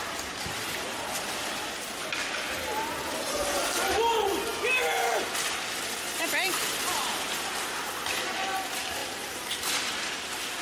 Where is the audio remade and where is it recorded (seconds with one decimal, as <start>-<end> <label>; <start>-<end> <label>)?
0.0-6.2 recorded; 6.2-7.9 remade; 7.9-9.0 recorded; 9.0-9.7 remade; 9.7-10.6 recorded